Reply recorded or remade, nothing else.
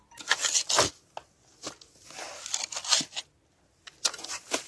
recorded